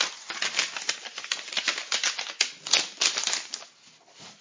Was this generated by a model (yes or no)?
no